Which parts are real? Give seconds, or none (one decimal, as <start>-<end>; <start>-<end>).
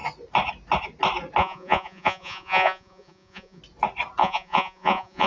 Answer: 0.0-1.4; 3.6-4.2